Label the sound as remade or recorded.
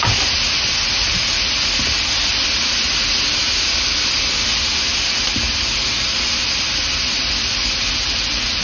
recorded